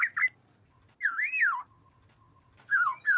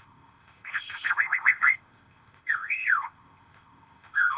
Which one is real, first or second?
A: first